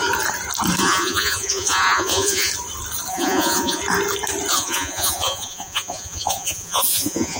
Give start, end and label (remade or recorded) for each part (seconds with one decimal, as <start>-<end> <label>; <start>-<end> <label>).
0.0-0.8 recorded; 0.8-2.5 remade; 2.5-3.1 recorded; 3.1-3.8 remade; 3.8-4.5 recorded; 4.5-7.4 remade